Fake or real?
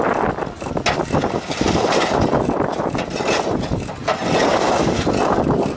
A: real